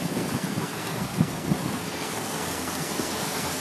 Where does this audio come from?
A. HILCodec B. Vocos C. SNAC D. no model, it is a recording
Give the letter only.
C